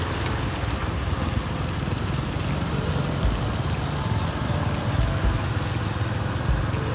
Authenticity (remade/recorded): recorded